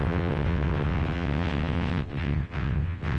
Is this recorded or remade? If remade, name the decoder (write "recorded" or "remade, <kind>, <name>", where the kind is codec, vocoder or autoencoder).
remade, vocoder, WaveNeXt